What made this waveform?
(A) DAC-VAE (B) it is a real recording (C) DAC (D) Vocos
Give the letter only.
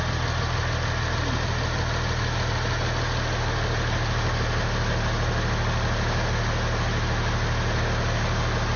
B